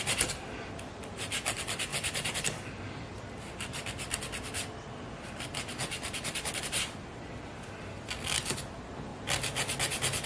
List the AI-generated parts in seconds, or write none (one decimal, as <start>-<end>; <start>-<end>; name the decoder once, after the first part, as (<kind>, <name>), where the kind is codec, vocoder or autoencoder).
none